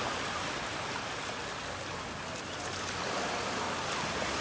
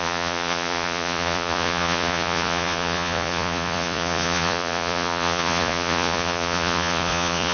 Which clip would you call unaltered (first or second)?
first